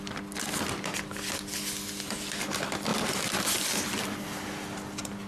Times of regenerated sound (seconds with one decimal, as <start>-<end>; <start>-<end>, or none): none